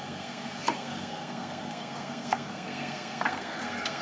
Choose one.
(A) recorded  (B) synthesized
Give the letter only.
B